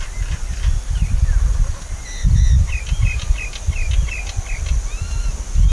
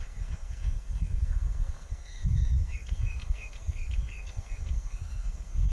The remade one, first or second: second